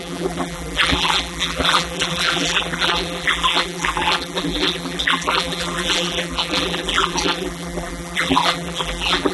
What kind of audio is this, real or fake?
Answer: fake